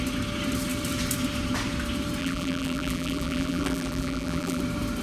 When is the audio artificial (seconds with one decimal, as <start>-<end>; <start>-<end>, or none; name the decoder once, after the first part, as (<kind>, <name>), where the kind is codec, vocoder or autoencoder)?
2.2-4.6 (vocoder, BigVGAN v2)